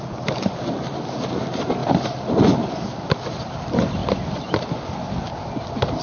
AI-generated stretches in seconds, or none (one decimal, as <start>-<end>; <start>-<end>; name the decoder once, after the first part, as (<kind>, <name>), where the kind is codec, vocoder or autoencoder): 0.0-1.8 (vocoder, BigVGAN v2); 3.5-4.0; 5.6-6.0